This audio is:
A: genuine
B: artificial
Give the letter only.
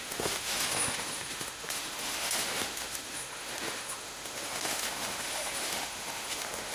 B